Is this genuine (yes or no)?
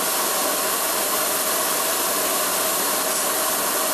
yes